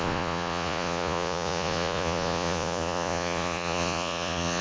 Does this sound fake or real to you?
fake